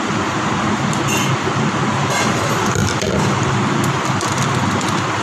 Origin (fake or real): fake